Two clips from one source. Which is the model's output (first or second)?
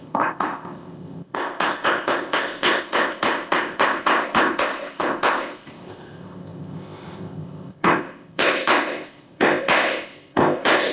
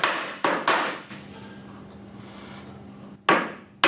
first